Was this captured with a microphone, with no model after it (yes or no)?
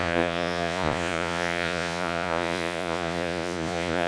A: no